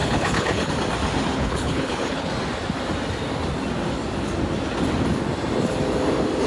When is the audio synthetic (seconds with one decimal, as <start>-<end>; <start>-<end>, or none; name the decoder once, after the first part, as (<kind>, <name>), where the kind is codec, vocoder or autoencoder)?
0.0-0.7 (codec, HILCodec); 1.3-2.3